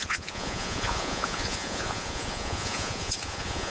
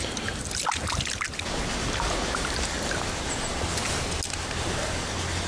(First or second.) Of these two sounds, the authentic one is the second